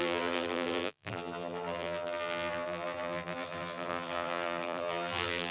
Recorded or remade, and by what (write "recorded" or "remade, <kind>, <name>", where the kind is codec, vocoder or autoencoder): remade, vocoder, BigVGAN v2